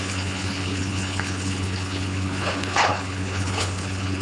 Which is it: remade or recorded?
remade